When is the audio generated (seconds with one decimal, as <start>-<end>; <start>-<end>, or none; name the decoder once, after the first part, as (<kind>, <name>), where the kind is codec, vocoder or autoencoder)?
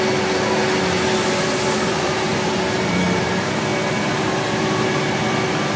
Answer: 0.0-3.7 (vocoder, BigVGAN v2); 4.4-5.8